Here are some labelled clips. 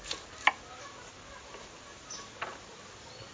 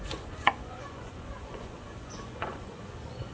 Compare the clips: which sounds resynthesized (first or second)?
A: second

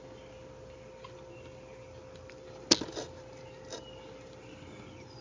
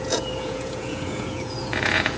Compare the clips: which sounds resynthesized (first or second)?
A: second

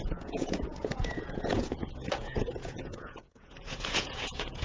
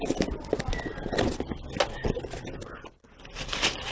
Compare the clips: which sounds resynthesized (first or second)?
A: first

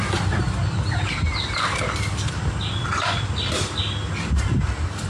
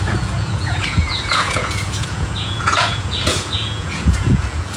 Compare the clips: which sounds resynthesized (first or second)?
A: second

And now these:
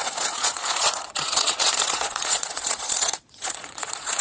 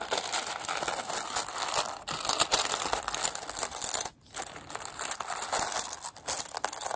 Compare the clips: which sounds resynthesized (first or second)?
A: first